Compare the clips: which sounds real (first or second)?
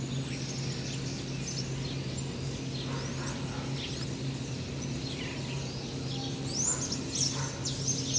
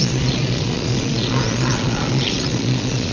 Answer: first